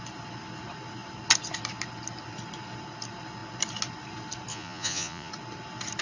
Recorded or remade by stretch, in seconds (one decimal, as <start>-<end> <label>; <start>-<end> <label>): 0.0-4.5 recorded; 4.5-5.3 remade; 5.3-6.0 recorded